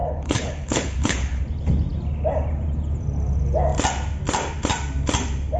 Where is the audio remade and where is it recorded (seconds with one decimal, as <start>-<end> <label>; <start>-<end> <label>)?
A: 0.0-1.4 remade; 1.4-5.6 recorded

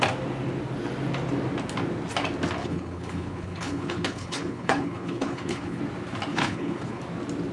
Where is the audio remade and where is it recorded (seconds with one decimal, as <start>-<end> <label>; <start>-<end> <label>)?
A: 0.0-2.6 recorded; 2.6-5.8 remade; 5.8-6.3 recorded; 6.3-7.0 remade; 7.0-7.5 recorded

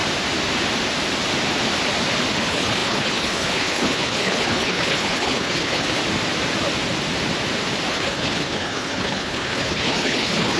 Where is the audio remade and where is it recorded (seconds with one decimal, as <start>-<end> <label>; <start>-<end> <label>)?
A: 0.0-2.3 recorded; 2.3-6.0 remade; 6.0-7.9 recorded; 7.9-10.6 remade

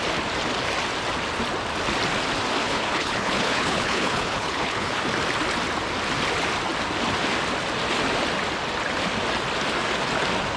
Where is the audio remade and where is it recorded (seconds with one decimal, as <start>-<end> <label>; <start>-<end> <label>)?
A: 0.0-2.6 recorded; 2.6-5.0 remade; 5.0-10.6 recorded

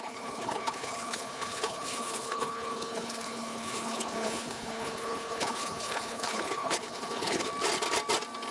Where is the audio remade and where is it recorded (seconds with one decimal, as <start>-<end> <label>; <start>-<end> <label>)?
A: 0.0-7.5 remade; 7.5-8.5 recorded

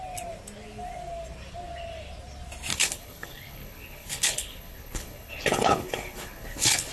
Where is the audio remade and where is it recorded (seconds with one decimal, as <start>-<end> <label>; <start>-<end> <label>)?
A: 0.0-2.7 recorded; 2.7-6.9 remade

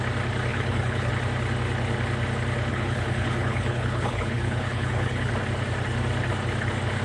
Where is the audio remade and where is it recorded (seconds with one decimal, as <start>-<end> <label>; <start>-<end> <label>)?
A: 0.0-0.5 recorded; 0.5-1.1 remade; 1.1-2.7 recorded; 2.7-5.3 remade; 5.3-7.0 recorded